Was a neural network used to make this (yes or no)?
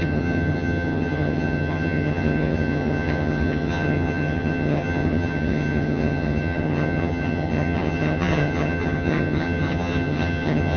yes